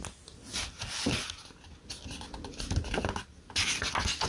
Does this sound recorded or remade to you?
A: recorded